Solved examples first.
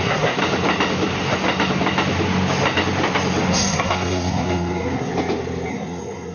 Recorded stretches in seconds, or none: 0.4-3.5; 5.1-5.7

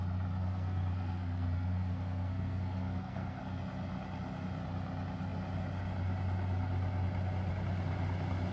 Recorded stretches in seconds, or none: 0.0-0.4; 3.4-8.5

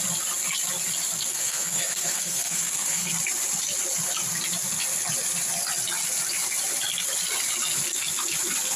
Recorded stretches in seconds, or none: 0.0-1.3; 3.1-8.8

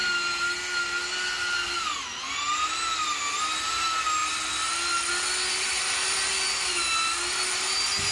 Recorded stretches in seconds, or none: 0.0-8.1